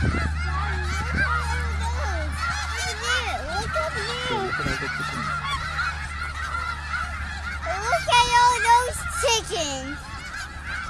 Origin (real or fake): real